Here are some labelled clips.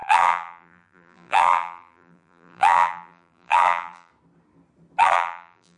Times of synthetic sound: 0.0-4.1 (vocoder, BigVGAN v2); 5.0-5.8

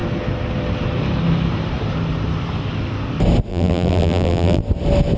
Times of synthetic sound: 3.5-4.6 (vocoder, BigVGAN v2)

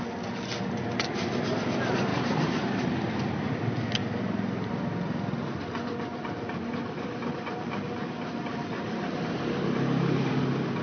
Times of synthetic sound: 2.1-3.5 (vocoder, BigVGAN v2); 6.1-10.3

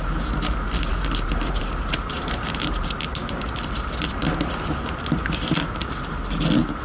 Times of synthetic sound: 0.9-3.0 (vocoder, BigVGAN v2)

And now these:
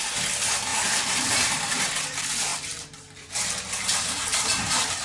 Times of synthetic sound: 0.7-1.8 (vocoder, BigVGAN v2); 2.5-5.0

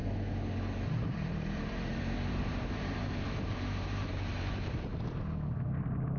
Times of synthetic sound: 0.9-4.9 (vocoder, BigVGAN v2)

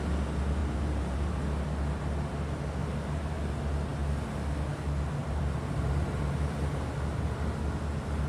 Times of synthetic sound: 0.6-1.4 (vocoder, BigVGAN v2); 2.8-3.5; 5.2-6.9